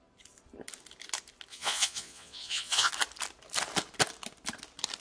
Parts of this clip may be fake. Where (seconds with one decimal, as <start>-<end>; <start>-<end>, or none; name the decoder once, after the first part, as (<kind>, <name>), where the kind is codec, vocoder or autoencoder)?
1.5-2.9 (vocoder, Vocos)